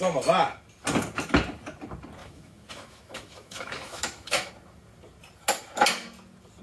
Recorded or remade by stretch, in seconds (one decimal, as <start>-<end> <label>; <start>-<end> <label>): 0.0-2.2 recorded; 2.2-4.5 remade; 4.5-6.6 recorded